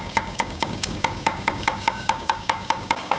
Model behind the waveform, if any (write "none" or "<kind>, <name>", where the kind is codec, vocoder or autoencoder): codec, DAC